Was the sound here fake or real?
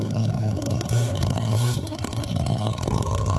fake